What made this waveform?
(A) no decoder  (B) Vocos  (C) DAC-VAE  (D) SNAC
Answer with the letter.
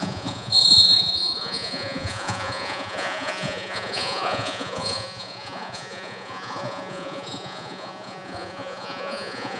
B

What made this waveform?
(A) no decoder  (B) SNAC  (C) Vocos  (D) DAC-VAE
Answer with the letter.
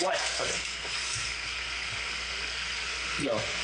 B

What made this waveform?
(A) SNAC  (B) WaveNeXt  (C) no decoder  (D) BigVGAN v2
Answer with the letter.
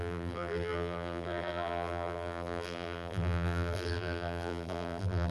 D